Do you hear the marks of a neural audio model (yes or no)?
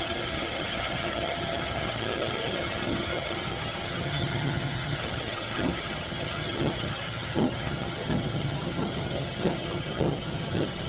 yes